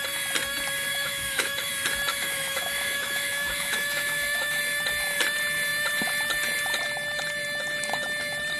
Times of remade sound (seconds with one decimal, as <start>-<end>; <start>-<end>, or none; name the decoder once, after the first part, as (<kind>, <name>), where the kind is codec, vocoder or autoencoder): 0.9-1.7 (autoencoder, DAC-VAE); 2.1-4.6